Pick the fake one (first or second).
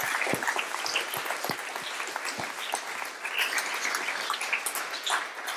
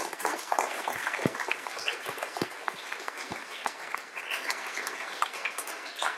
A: second